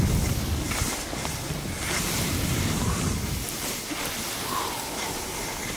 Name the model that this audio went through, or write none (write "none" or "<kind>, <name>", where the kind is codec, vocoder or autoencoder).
none